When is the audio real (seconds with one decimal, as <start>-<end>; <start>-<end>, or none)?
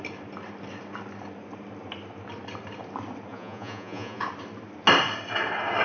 0.0-3.3; 4.2-5.8